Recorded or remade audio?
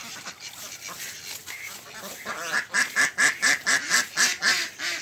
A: recorded